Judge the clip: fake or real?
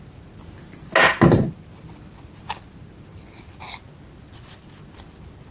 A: real